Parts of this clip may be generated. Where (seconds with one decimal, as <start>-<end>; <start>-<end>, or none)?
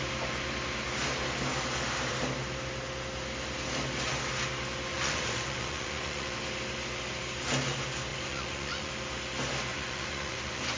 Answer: 4.9-6.4; 8.1-8.9; 9.7-10.8